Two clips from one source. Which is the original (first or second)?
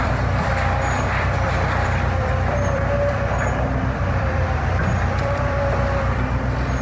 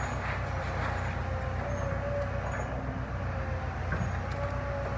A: second